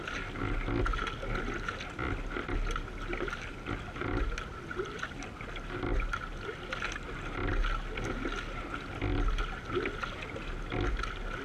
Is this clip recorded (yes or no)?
yes